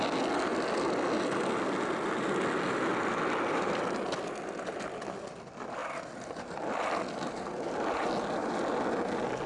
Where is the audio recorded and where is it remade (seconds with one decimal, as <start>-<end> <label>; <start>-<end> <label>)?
0.0-9.5 recorded